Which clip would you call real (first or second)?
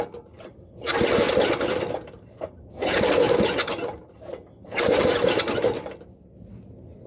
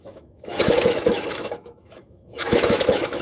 first